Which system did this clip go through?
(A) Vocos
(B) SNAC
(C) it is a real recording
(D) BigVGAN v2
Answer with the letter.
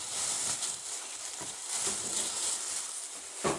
C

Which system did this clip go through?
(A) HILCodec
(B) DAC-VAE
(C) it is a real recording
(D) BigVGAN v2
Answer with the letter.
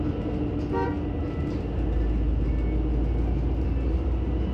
C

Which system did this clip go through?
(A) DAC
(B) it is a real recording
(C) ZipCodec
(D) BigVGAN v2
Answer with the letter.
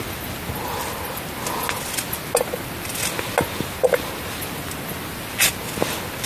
B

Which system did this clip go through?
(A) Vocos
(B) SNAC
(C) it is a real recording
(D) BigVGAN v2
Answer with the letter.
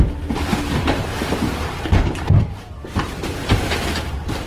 D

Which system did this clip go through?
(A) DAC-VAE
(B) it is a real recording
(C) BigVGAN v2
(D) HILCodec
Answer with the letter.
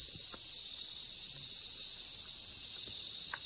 B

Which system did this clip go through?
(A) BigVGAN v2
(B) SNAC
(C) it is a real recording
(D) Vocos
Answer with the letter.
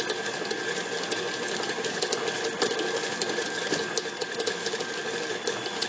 C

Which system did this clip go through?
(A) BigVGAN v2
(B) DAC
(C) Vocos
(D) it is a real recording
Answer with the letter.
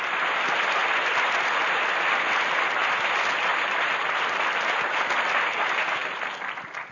D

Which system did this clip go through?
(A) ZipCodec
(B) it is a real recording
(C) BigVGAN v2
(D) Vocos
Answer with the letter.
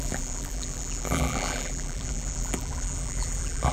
C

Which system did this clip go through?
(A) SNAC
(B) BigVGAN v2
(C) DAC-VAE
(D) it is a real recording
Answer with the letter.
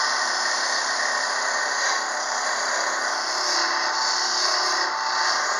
B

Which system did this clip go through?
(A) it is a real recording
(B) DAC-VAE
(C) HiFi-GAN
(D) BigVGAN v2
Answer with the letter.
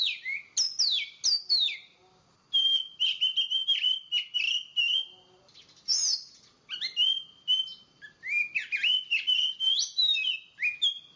A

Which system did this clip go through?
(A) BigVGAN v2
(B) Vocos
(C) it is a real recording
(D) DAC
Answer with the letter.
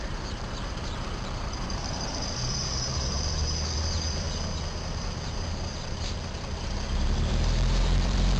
A